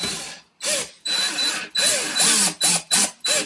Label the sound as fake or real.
fake